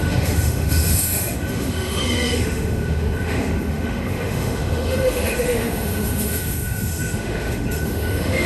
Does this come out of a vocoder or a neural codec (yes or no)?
yes